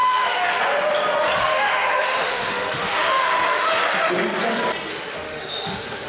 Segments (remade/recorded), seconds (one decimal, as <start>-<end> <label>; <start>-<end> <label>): 0.0-0.6 remade; 0.6-1.4 recorded; 1.4-4.1 remade; 4.1-4.9 recorded; 4.9-6.1 remade